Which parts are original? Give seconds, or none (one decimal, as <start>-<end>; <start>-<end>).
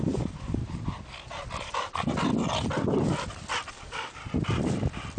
0.6-3.7; 4.2-5.2